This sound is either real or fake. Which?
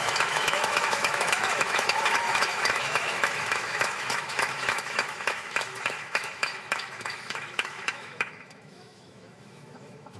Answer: fake